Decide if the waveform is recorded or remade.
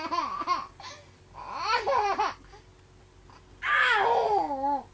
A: recorded